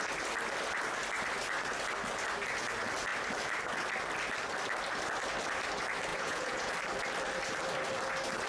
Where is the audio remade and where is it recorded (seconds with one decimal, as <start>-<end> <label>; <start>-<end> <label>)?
0.0-6.1 recorded; 6.1-6.7 remade; 6.7-8.5 recorded